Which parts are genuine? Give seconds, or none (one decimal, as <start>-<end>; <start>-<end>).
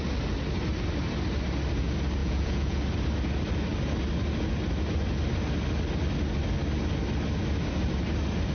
0.0-2.2; 2.8-8.5